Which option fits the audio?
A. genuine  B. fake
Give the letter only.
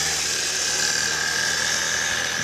A